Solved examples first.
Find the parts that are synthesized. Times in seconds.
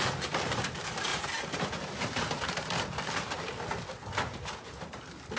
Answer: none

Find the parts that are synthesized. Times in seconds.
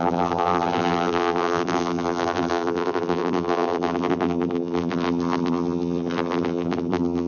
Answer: 0.0-7.3 (vocoder, BigVGAN v2)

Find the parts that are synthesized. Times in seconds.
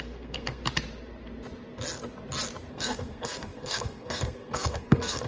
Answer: 0.0-0.6 (codec, SNAC); 2.7-5.3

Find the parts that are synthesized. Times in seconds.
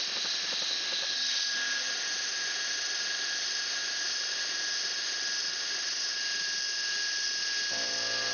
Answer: none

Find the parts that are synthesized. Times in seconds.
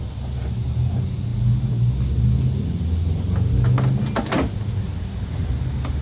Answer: none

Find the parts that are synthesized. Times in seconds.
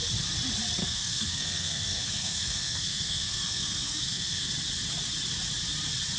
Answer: 0.8-4.5 (codec, SNAC)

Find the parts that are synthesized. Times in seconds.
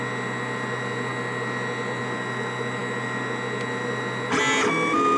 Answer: none